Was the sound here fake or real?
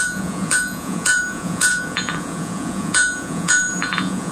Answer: fake